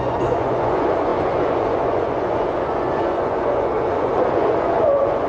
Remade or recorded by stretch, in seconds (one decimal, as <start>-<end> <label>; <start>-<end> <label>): 0.0-5.3 remade